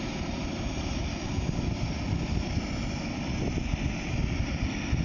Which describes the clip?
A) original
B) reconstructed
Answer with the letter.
A